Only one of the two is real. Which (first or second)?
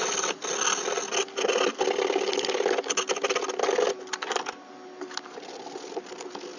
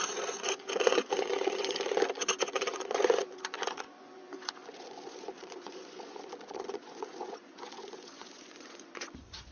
first